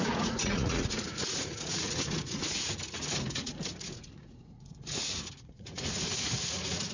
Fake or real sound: fake